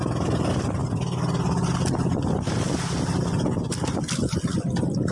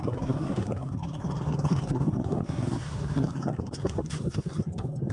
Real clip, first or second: first